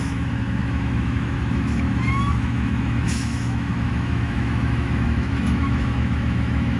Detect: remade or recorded remade